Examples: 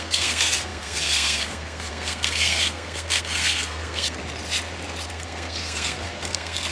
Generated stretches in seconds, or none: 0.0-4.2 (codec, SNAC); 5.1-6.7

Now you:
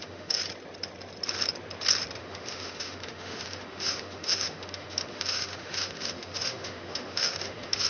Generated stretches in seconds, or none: 0.0-0.4 (autoencoder, DAC-VAE); 2.2-7.9